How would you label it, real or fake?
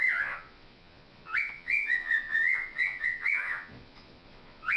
fake